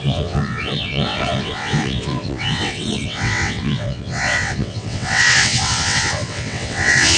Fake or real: fake